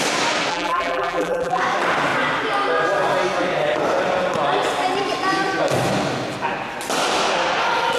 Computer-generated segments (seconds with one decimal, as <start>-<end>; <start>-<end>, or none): 0.5-1.6